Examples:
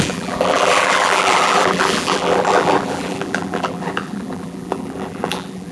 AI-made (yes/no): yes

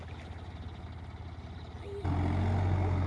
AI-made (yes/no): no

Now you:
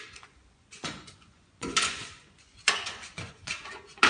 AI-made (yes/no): yes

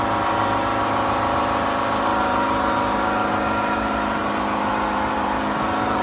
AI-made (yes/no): yes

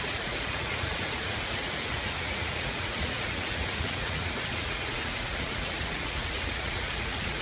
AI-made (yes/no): yes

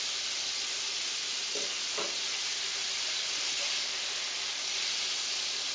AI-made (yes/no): no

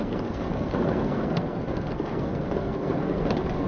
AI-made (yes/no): yes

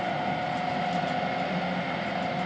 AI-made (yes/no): no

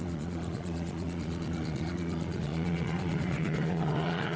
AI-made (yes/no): yes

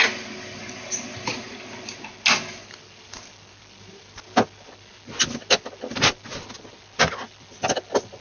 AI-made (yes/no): no